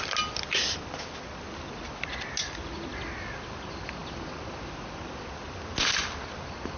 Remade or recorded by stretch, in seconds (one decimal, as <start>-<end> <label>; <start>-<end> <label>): 0.0-6.8 recorded